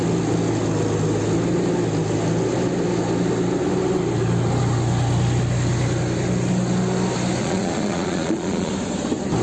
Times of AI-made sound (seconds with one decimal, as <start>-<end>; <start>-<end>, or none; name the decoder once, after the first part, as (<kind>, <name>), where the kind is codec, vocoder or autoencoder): 7.4-8.7 (vocoder, Vocos)